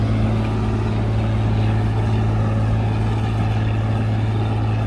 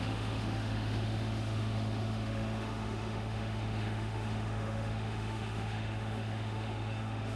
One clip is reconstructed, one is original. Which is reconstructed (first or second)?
second